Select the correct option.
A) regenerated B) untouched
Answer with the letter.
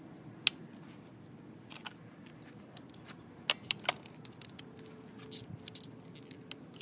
B